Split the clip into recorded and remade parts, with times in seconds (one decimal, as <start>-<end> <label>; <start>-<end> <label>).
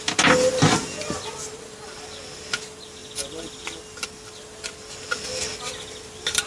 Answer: 0.0-6.5 recorded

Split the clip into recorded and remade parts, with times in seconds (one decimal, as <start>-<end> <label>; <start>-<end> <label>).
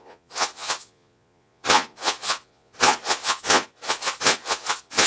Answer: 0.0-5.1 remade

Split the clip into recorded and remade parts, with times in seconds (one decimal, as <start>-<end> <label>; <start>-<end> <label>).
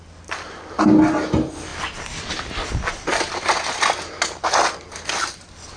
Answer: 0.0-5.8 recorded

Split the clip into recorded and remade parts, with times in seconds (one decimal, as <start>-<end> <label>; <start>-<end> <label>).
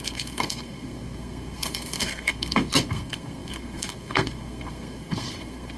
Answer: 0.0-5.8 remade